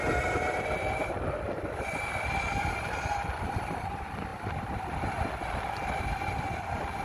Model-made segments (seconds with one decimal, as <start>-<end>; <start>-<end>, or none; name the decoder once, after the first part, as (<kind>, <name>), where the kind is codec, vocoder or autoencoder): none